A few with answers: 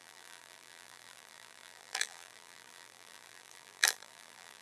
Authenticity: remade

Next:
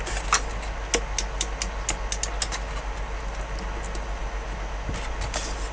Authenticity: recorded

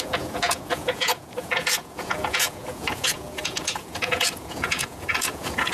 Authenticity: remade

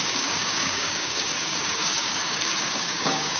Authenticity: remade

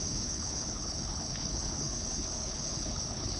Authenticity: remade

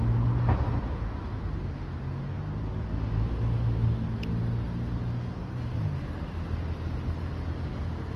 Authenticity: recorded